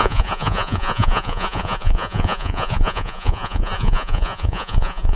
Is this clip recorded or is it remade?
remade